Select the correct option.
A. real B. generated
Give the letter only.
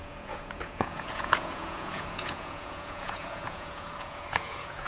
B